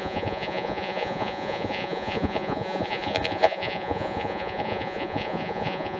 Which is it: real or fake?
fake